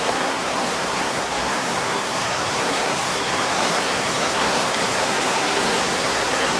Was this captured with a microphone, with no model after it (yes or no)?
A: no